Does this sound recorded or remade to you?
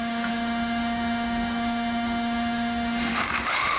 remade